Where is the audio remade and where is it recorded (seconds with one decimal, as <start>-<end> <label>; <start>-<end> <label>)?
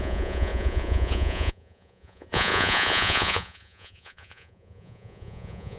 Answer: 0.0-5.8 remade